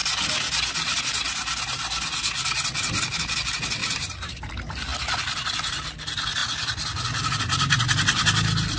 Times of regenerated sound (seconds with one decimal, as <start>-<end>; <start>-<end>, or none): 3.8-4.5